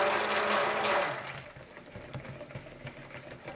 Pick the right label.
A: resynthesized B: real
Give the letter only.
B